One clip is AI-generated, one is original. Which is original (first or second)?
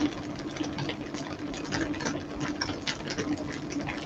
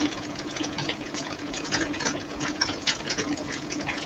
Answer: first